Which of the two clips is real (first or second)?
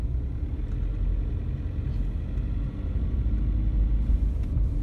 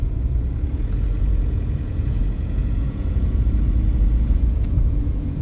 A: first